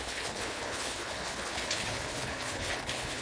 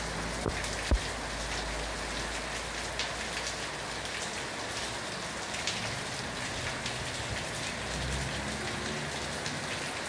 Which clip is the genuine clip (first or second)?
second